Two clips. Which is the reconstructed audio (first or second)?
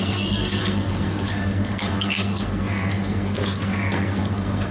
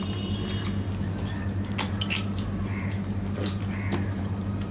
first